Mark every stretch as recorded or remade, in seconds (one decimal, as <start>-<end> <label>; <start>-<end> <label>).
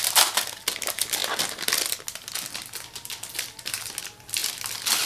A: 0.0-5.1 recorded